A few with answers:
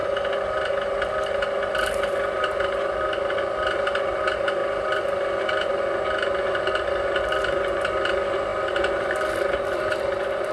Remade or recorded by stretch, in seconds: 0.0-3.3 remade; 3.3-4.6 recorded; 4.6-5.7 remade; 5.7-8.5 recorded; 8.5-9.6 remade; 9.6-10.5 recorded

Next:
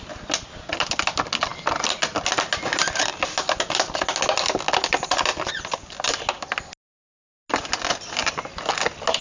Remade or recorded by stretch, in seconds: 0.0-9.2 recorded

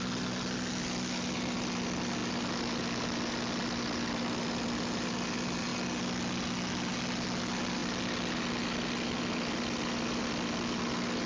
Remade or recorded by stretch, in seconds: 0.0-11.3 recorded

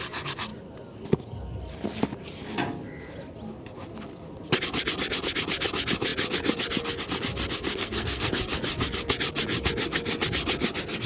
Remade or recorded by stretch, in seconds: 0.0-7.8 recorded; 7.8-8.3 remade; 8.3-11.1 recorded

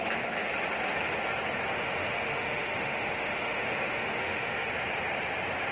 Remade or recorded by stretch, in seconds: 0.0-1.7 recorded; 1.7-4.7 remade; 4.7-5.7 recorded